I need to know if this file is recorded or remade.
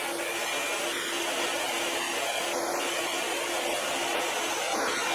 recorded